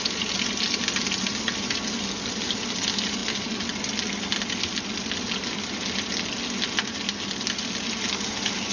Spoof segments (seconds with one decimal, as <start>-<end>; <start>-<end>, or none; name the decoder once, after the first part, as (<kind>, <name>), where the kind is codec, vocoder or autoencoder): none